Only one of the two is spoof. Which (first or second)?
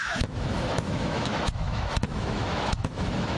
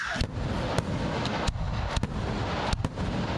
first